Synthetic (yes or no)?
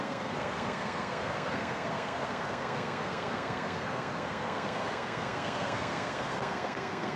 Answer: yes